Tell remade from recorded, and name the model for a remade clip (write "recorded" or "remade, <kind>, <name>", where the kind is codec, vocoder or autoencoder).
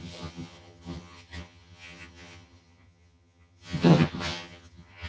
remade, vocoder, HiFi-GAN